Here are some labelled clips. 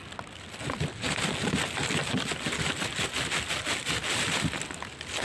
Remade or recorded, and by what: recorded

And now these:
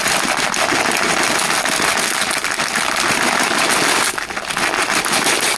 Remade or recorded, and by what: recorded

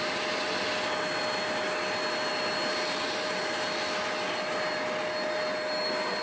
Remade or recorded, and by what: recorded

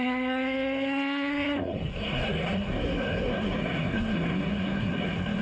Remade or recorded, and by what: remade, codec, SNAC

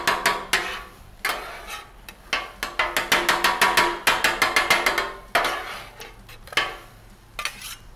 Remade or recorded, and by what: recorded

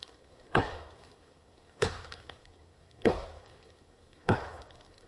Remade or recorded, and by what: remade, codec, SNAC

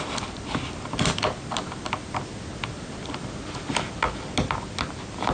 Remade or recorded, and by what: recorded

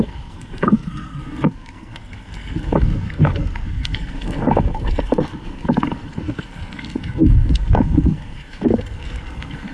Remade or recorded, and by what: remade, codec, SNAC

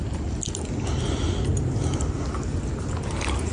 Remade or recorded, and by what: recorded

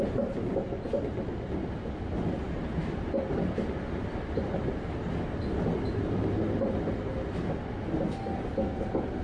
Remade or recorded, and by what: recorded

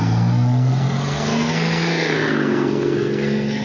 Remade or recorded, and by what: remade, codec, SNAC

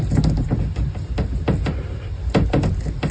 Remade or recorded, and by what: recorded